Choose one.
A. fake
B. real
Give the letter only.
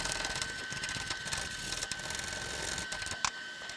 B